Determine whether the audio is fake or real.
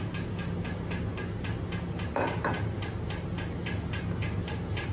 real